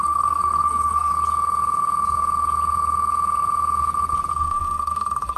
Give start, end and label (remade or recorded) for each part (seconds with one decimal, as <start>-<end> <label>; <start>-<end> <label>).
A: 0.0-1.1 remade; 1.1-4.3 recorded; 4.3-5.4 remade